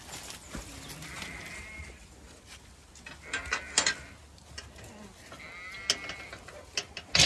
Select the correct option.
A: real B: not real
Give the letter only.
A